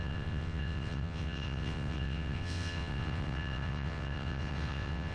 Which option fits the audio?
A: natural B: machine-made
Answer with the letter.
B